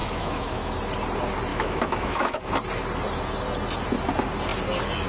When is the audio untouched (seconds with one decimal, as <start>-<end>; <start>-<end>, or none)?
0.7-1.5; 2.5-5.1

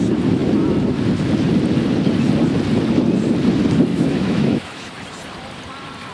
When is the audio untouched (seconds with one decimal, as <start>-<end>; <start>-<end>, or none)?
0.0-3.9; 4.9-6.1